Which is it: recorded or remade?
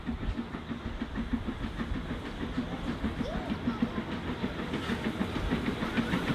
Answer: recorded